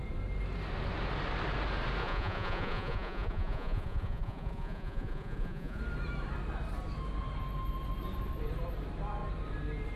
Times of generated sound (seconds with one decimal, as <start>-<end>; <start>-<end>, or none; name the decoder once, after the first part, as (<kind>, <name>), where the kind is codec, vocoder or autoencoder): 2.0-5.8 (vocoder, Vocos)